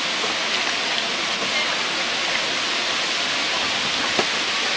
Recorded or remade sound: recorded